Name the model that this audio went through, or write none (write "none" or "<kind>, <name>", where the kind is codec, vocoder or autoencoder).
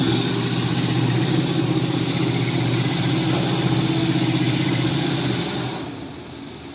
none